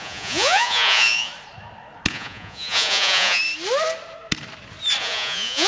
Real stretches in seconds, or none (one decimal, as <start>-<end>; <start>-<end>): 1.3-2.1; 3.4-5.0